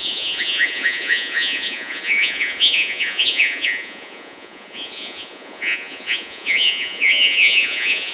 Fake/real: fake